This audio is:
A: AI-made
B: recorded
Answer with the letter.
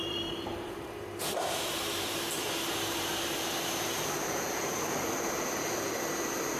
A